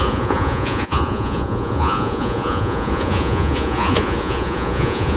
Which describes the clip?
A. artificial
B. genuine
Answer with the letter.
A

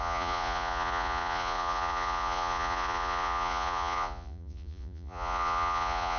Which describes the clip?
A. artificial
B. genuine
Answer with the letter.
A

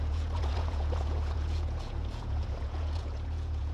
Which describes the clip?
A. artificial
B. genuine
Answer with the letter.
A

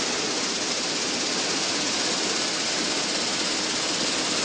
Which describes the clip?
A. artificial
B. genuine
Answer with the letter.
B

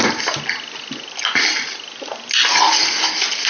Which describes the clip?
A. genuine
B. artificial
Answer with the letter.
A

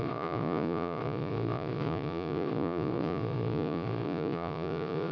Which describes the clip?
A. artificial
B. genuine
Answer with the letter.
A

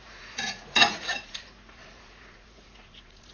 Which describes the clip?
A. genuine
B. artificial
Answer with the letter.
B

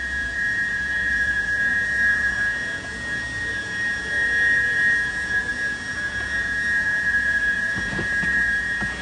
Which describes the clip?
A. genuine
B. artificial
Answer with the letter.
B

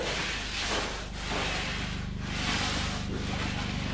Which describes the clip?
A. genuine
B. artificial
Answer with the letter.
A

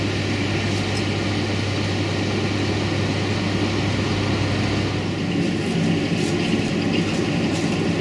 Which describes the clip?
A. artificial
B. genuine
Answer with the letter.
B